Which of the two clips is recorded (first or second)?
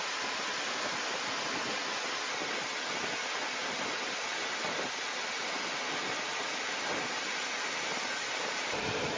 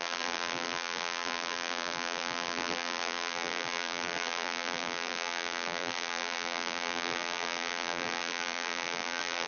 first